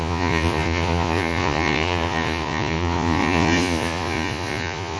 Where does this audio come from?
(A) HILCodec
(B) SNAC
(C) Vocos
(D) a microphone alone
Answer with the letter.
C